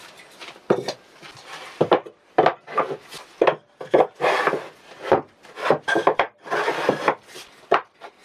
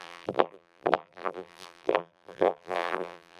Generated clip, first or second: second